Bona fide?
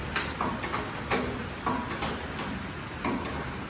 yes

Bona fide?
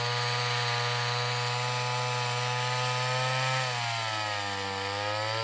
yes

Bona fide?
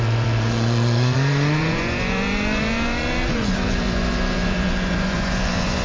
no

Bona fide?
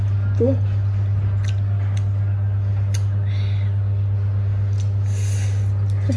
yes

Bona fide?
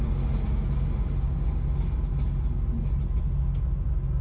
yes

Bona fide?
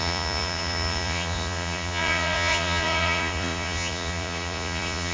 no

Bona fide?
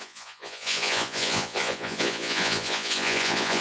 no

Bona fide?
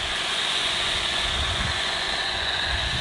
no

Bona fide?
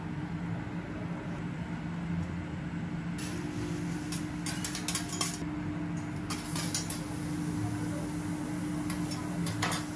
yes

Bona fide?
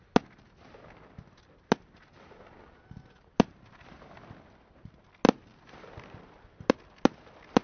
yes